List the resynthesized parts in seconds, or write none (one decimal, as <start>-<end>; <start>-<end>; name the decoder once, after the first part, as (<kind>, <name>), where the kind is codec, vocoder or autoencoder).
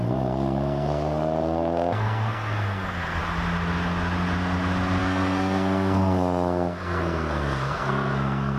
0.0-3.2 (codec, SNAC); 5.0-8.6